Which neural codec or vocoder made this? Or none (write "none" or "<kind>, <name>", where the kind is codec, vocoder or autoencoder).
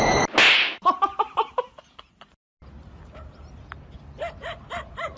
none